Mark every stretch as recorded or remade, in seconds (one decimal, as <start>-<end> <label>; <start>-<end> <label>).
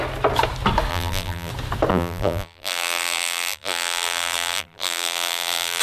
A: 0.0-0.9 recorded; 0.9-1.5 remade; 1.5-1.9 recorded; 1.9-5.8 remade